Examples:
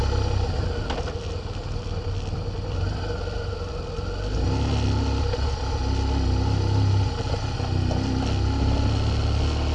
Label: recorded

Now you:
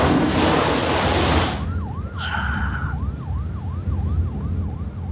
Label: recorded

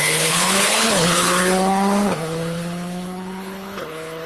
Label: remade